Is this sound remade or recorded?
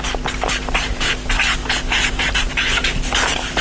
recorded